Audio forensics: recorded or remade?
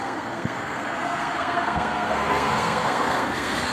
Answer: remade